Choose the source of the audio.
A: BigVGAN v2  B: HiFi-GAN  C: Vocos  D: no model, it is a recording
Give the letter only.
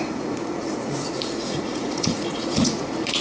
C